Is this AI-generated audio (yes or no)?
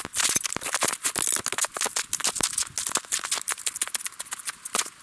no